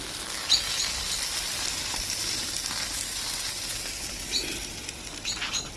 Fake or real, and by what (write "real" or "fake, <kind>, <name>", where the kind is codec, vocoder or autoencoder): real